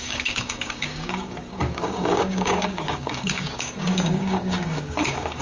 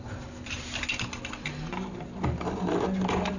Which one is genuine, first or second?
second